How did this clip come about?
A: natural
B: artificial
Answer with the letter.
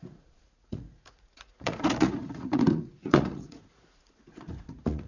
B